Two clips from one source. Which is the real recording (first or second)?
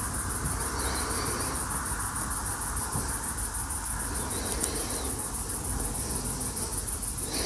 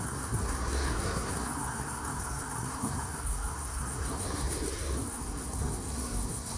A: first